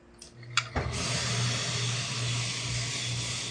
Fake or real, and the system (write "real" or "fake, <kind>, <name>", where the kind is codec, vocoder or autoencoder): real